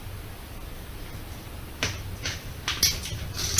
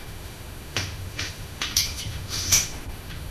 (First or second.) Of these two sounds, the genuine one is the first